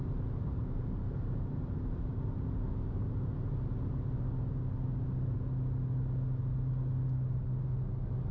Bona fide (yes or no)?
yes